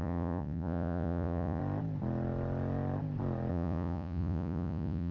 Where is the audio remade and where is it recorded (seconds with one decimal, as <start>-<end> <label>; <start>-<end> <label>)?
0.0-1.6 remade; 1.6-3.5 recorded; 3.5-5.1 remade